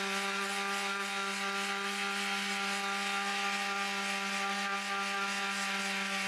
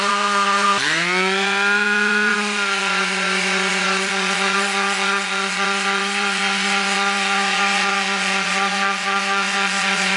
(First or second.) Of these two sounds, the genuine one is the first